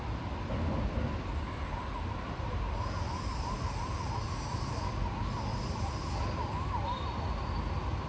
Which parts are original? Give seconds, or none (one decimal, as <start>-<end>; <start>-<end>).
0.0-5.5; 6.1-8.1